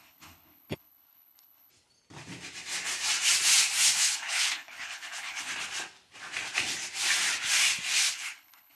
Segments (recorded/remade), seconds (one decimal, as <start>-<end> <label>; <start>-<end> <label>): 0.0-1.7 remade; 1.7-4.0 recorded; 4.0-5.5 remade; 5.5-8.1 recorded; 8.1-8.8 remade